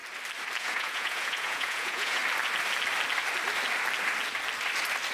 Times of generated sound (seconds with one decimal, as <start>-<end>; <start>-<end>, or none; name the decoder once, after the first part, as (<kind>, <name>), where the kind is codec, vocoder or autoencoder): 0.6-2.2 (vocoder, Vocos)

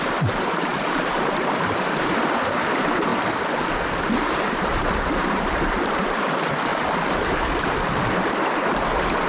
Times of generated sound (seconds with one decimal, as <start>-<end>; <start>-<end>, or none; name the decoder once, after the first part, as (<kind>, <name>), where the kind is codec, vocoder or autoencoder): 0.0-3.1 (vocoder, BigVGAN v2); 4.5-6.7; 8.0-9.3

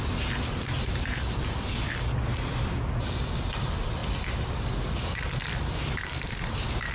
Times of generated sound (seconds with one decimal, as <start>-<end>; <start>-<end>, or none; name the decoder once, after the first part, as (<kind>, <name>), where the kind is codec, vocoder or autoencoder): 0.9-1.4 (vocoder, BigVGAN v2)

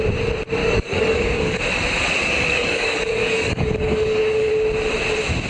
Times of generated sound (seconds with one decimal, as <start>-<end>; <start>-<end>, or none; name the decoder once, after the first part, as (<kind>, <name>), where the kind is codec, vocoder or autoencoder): 0.6-1.6 (codec, DAC); 2.2-4.5

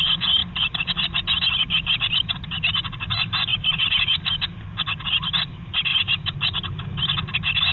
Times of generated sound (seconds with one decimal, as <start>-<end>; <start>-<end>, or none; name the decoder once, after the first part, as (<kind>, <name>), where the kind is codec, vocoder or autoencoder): 3.5-4.1 (vocoder, BigVGAN v2); 5.9-6.6

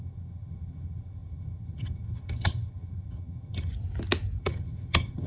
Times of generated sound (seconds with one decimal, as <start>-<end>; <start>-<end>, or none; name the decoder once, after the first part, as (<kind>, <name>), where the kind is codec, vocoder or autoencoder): 0.0-3.7 (vocoder, HiFi-GAN); 4.4-5.3